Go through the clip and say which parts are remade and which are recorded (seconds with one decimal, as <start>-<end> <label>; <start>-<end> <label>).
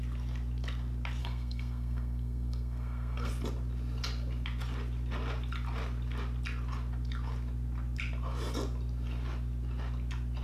0.0-1.2 recorded; 1.2-3.3 remade; 3.3-10.4 recorded